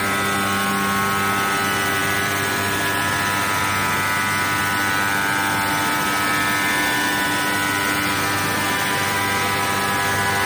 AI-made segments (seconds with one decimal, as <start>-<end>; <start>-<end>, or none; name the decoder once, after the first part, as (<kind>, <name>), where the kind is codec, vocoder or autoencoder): 2.0-2.8 (vocoder, BigVGAN v2)